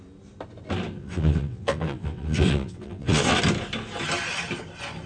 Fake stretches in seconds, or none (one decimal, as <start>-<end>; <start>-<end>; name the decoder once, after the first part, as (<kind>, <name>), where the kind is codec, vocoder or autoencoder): 1.0-3.4 (vocoder, WaveNeXt)